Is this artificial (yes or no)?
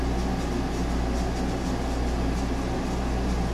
no